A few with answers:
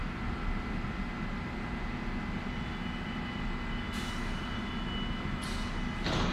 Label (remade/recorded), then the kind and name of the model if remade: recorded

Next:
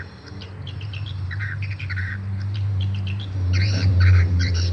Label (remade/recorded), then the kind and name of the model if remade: remade, vocoder, BigVGAN v2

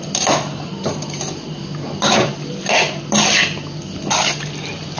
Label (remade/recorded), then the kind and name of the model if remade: recorded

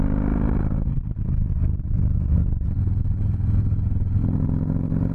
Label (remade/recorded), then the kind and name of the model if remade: recorded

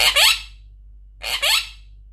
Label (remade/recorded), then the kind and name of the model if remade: recorded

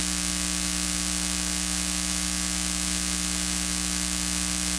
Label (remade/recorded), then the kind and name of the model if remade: recorded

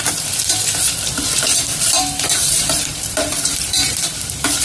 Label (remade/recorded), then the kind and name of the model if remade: remade, vocoder, BigVGAN v2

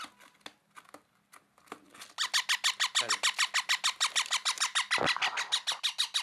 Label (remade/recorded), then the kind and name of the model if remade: recorded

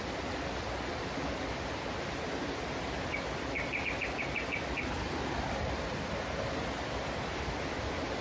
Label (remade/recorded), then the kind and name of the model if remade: recorded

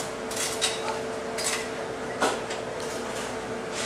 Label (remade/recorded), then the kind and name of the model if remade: recorded